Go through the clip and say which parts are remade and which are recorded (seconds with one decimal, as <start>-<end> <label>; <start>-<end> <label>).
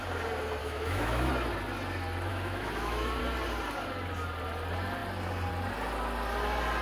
0.0-0.6 recorded; 0.6-1.3 remade; 1.3-2.3 recorded; 2.3-3.2 remade; 3.2-6.8 recorded